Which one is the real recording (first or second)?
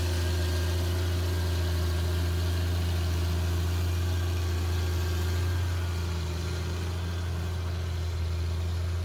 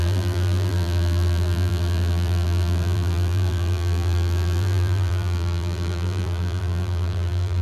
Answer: first